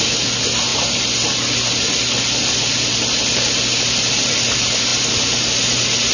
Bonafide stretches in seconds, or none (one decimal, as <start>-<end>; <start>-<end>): 0.0-6.1